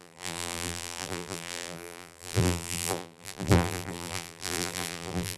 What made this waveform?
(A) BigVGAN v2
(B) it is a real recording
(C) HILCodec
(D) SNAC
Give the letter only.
A